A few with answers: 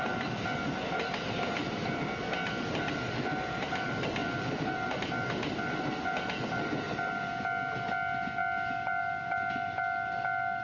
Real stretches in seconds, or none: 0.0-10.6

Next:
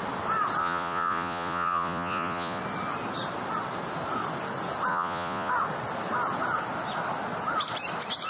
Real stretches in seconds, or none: 0.0-0.6; 2.6-4.9; 5.5-8.3

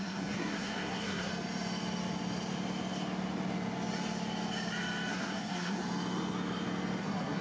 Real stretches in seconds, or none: 1.3-5.1; 5.8-7.0

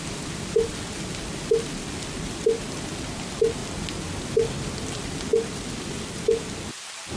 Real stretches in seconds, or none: 0.0-7.2

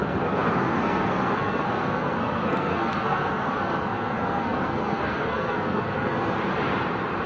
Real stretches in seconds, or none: 6.5-7.3

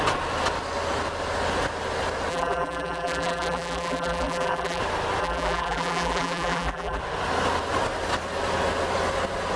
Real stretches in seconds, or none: 0.0-2.3; 4.8-5.2; 7.0-9.6

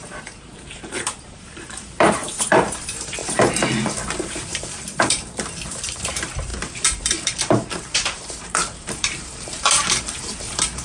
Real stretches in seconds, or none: none